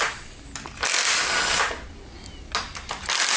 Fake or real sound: real